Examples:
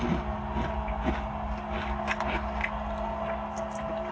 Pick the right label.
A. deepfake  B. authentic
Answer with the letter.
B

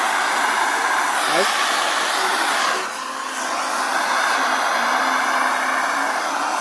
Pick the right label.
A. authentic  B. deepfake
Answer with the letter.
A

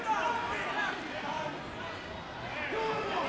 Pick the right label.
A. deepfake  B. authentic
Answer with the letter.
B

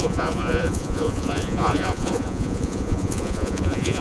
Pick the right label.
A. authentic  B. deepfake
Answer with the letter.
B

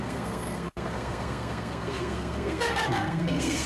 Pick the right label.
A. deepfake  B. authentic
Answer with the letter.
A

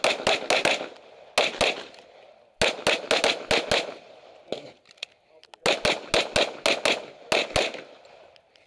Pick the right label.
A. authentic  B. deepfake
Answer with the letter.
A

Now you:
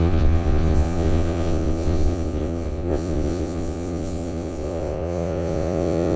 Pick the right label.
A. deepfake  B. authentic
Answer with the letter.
A